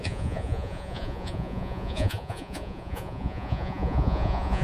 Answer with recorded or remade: remade